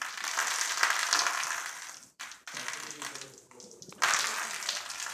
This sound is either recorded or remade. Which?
remade